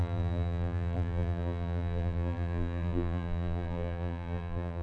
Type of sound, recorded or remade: remade